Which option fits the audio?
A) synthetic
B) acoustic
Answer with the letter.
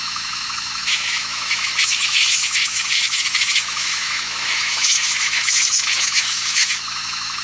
A